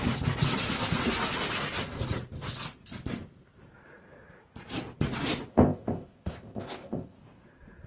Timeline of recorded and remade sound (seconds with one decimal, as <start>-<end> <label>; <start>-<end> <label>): 0.0-5.5 recorded; 5.5-7.2 remade; 7.2-7.9 recorded